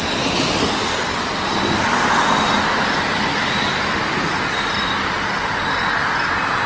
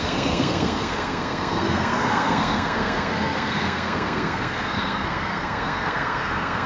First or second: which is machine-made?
second